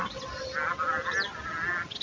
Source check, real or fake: real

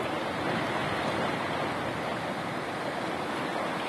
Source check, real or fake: real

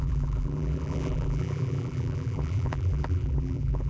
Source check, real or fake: fake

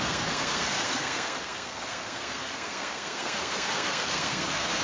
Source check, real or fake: fake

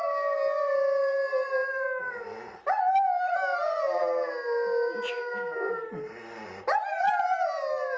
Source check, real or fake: real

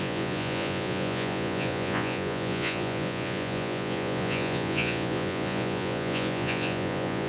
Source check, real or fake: fake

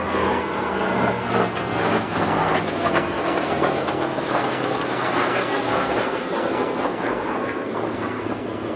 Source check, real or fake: fake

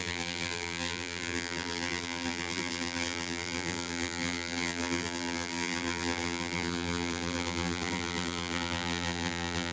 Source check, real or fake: fake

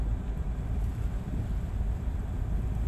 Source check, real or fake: real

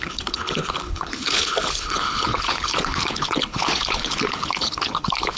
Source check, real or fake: fake